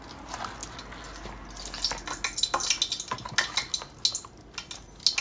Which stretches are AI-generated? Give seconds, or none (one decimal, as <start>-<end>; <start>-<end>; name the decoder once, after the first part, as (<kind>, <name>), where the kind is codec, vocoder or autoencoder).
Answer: none

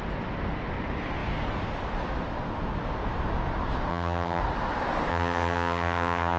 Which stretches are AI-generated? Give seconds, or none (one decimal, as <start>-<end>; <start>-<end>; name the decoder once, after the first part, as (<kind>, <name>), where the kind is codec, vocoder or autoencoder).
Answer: 3.9-4.4 (vocoder, HiFi-GAN); 5.1-6.4

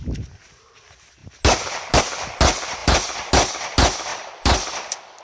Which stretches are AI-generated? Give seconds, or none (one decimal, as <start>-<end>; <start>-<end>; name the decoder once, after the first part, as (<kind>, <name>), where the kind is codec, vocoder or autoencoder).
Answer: 0.0-0.6 (vocoder, BigVGAN v2); 2.8-3.3; 4.1-5.2

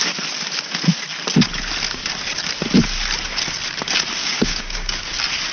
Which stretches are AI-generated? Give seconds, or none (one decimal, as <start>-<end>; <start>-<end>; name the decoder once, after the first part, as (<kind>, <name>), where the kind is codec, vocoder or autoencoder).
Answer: 4.2-5.0 (codec, DAC)

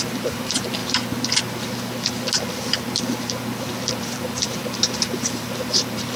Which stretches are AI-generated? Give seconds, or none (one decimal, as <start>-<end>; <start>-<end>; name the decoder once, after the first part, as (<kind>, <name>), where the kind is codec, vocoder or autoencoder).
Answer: 0.0-0.8 (vocoder, BigVGAN v2); 3.9-6.2

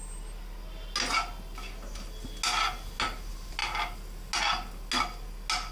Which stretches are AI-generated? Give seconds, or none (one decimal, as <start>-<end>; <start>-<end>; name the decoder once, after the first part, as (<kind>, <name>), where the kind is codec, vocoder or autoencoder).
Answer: none